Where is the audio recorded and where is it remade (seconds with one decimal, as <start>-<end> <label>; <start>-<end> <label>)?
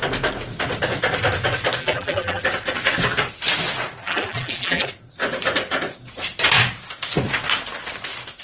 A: 0.0-1.8 recorded; 1.8-2.4 remade; 2.4-4.0 recorded; 4.0-4.9 remade; 4.9-8.4 recorded